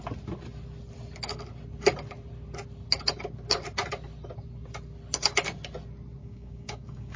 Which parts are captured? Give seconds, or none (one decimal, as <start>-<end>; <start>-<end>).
0.0-6.2